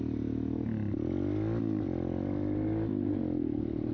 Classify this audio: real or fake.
real